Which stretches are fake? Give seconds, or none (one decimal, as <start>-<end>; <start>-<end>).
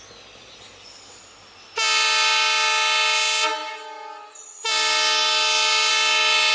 none